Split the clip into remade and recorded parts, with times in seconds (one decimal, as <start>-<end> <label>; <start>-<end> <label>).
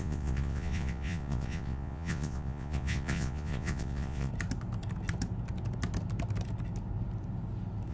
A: 0.0-4.3 remade; 4.3-7.9 recorded